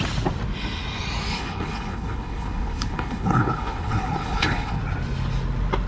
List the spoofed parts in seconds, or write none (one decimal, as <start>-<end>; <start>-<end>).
1.3-4.8